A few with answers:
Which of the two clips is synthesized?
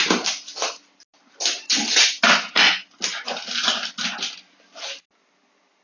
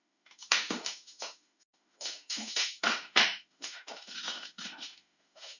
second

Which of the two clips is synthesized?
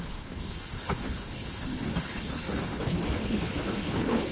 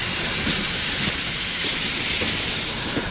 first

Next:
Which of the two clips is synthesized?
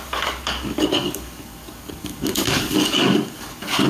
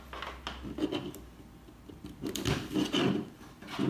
first